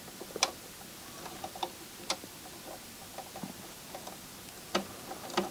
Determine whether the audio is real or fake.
real